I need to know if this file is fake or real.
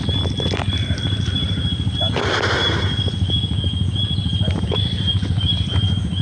real